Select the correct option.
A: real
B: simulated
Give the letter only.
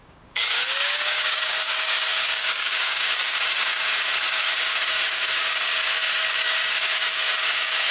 B